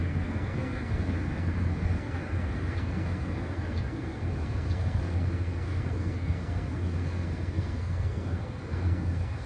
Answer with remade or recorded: remade